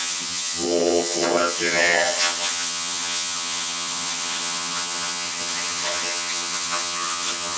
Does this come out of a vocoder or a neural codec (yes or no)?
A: yes